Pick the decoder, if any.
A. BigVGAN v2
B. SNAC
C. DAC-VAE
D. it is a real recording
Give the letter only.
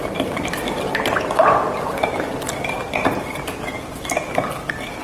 D